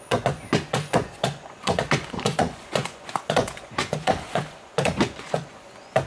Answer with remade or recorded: remade